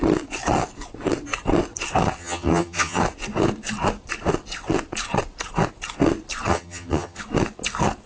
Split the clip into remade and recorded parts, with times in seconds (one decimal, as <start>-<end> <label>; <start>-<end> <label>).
0.0-2.2 recorded; 2.2-3.0 remade; 3.0-6.5 recorded; 6.5-7.2 remade; 7.2-8.1 recorded